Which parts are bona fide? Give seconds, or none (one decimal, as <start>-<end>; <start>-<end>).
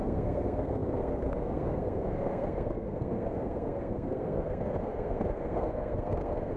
none